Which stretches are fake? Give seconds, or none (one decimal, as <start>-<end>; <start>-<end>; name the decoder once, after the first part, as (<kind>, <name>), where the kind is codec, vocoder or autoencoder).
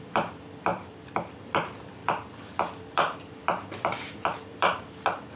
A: 0.0-5.4 (vocoder, BigVGAN v2)